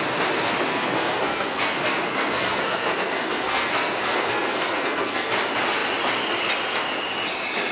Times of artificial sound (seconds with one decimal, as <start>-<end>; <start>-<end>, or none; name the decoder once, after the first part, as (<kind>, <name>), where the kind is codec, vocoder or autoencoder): 0.7-5.3 (codec, SNAC)